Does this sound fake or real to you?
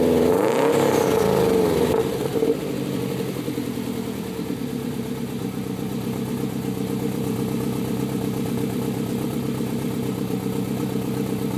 fake